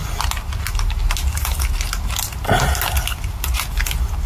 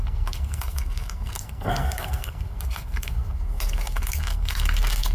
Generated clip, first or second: second